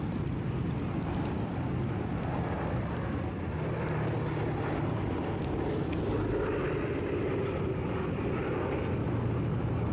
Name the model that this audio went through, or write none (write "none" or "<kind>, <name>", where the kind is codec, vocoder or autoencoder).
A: none